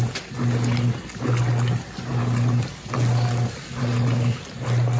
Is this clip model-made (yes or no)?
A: no